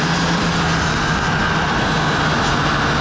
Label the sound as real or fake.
real